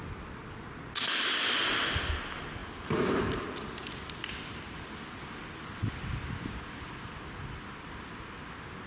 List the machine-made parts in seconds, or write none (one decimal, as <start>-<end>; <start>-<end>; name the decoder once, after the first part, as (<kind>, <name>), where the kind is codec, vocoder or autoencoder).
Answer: none